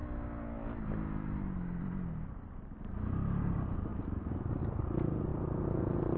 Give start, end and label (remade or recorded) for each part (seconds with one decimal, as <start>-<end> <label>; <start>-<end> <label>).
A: 0.0-3.9 recorded; 3.9-4.6 remade; 4.6-6.2 recorded